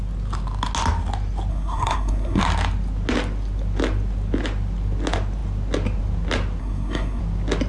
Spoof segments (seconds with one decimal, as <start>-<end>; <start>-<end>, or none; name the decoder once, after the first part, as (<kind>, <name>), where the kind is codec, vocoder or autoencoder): 1.5-2.4 (codec, SNAC); 6.6-7.2